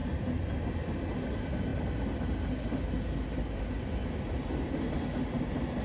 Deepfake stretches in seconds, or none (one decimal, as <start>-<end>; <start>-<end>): none

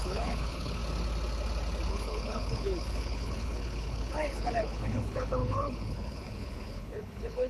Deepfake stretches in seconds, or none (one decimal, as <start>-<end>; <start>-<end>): 0.0-0.8; 1.9-7.5

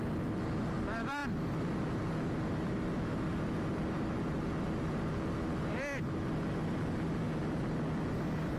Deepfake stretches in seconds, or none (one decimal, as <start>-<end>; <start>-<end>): none

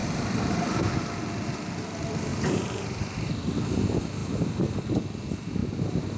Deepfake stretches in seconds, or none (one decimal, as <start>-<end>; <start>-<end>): 0.0-0.9; 2.3-3.6; 4.2-5.0; 5.6-6.2

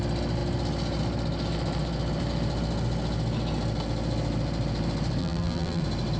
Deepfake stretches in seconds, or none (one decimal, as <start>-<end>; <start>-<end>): 5.2-5.8